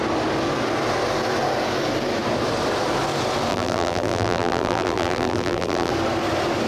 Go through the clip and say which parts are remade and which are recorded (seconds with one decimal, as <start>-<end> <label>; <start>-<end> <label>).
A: 0.0-3.5 recorded; 3.5-5.9 remade; 5.9-6.7 recorded